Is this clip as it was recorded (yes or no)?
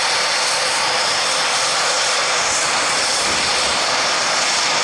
yes